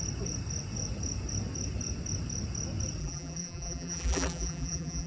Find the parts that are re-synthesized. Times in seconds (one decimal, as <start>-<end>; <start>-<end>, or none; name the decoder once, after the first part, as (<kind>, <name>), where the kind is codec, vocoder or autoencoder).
3.0-5.1 (vocoder, BigVGAN v2)